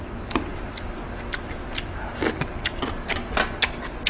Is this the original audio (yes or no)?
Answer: yes